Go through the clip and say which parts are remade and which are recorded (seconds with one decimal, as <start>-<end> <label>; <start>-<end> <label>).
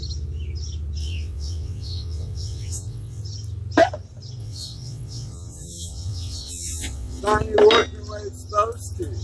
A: 0.0-1.0 recorded; 1.0-3.2 remade; 3.2-4.4 recorded; 4.4-7.2 remade; 7.2-9.2 recorded